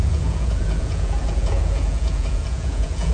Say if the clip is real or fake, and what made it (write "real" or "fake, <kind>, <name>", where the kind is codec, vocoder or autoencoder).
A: fake, vocoder, Vocos